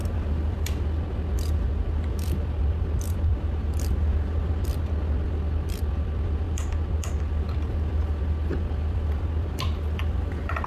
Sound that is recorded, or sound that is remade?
remade